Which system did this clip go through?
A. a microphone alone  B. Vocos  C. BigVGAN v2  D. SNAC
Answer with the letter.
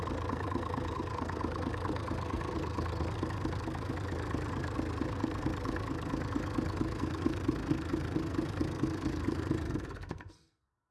D